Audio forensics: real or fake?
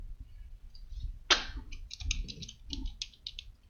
real